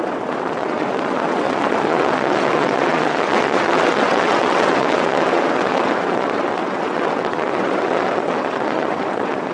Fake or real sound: fake